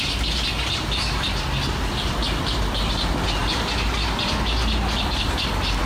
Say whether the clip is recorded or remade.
recorded